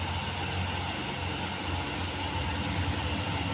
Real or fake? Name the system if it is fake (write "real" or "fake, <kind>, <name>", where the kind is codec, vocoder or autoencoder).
real